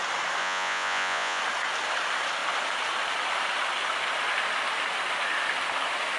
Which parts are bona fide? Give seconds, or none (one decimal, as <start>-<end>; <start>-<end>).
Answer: 0.0-0.4; 1.4-6.2